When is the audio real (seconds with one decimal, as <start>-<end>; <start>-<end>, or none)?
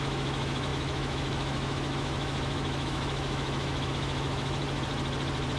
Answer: 4.6-5.6